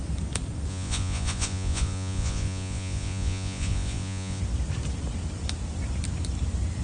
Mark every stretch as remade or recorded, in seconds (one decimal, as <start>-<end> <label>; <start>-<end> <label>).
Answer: 0.0-0.7 recorded; 0.7-4.4 remade; 4.4-6.8 recorded